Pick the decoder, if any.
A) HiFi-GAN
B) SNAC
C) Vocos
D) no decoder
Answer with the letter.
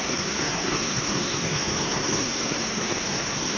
B